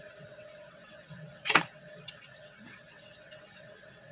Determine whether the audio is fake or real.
fake